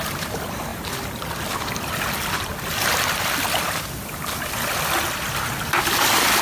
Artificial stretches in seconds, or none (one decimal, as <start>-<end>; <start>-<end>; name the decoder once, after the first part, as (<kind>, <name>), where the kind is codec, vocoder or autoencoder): 0.7-4.5 (vocoder, BigVGAN v2)